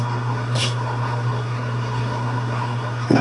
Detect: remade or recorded remade